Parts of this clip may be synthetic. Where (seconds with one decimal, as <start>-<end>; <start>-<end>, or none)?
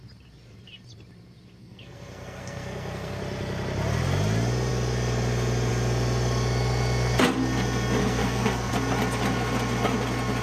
1.6-3.2; 8.0-8.7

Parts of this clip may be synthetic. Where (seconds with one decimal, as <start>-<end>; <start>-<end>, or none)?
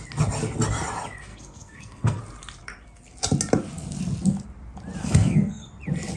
1.3-2.2; 5.0-5.7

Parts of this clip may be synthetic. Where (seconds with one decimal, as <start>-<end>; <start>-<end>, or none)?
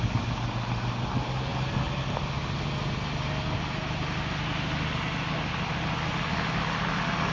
none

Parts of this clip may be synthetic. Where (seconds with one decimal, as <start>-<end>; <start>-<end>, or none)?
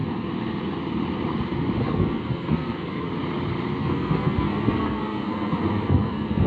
1.8-3.1; 3.8-6.5